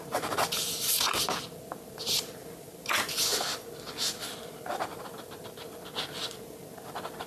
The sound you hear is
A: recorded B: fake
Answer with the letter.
A